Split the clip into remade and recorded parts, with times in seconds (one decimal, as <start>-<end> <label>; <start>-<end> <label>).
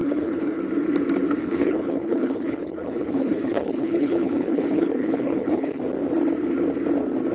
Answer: 0.0-0.6 remade; 0.6-1.4 recorded; 1.4-5.8 remade; 5.8-7.3 recorded